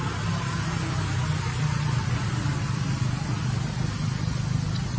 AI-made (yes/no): no